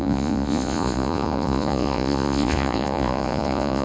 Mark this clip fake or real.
fake